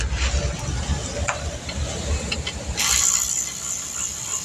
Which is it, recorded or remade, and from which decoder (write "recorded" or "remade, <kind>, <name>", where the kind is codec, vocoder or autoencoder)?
recorded